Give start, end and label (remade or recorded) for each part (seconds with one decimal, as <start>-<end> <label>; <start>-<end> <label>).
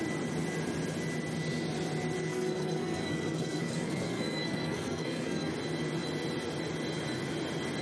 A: 0.0-2.3 recorded; 2.3-5.5 remade; 5.5-7.8 recorded